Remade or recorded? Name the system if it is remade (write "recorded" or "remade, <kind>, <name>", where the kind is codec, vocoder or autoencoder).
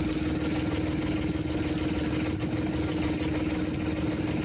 recorded